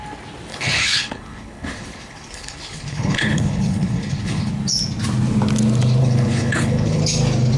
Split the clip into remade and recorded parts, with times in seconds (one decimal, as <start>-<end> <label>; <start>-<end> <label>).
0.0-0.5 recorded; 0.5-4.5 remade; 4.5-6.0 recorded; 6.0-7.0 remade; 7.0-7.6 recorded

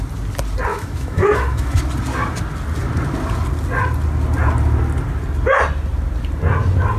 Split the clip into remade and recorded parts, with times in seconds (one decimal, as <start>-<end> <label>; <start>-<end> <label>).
0.0-0.7 recorded; 0.7-1.8 remade; 1.8-7.0 recorded

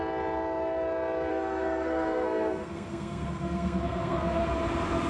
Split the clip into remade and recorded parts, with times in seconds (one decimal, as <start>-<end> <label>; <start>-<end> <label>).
0.0-1.3 recorded; 1.3-4.4 remade; 4.4-5.1 recorded

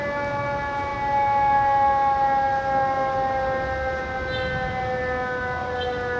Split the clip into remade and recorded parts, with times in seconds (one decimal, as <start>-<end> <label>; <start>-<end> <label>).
0.0-6.2 recorded

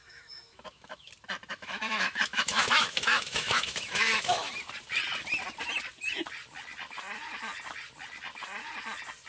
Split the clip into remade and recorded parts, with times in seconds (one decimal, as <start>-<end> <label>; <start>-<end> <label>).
0.0-1.1 remade; 1.1-1.5 recorded; 1.5-4.5 remade; 4.5-9.3 recorded

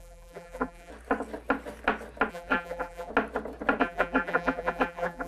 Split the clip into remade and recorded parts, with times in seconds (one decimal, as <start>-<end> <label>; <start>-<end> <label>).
0.0-0.9 remade; 0.9-2.3 recorded; 2.3-3.1 remade; 3.1-3.8 recorded; 3.8-5.3 remade